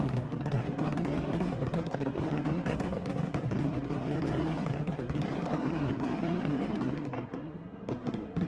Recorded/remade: remade